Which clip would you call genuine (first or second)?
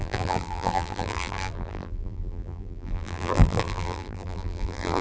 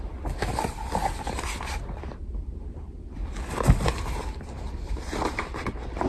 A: second